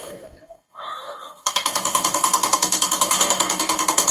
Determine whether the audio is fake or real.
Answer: fake